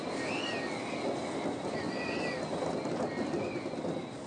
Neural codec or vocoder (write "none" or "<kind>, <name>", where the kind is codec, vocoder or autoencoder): none